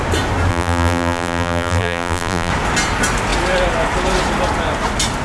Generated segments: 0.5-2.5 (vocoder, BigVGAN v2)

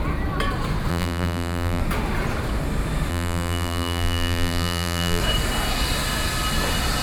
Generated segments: 0.9-1.8 (vocoder, BigVGAN v2); 3.1-5.2

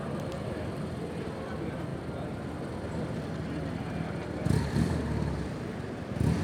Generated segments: 0.0-1.9 (vocoder, BigVGAN v2); 5.5-6.4

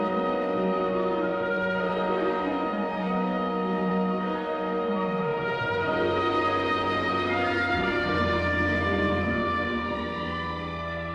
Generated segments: 1.3-1.9 (vocoder, BigVGAN v2); 5.3-10.0

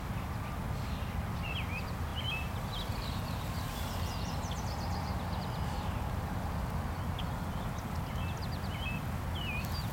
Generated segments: none

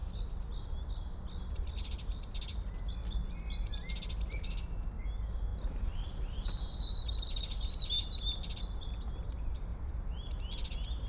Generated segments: 5.5-7.7 (vocoder, BigVGAN v2); 9.7-10.4

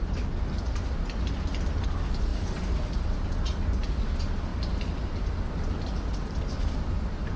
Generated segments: none

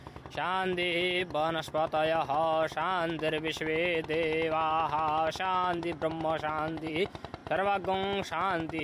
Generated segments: 0.0-1.2 (vocoder, BigVGAN v2); 5.3-7.4